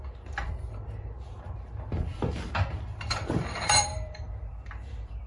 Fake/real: fake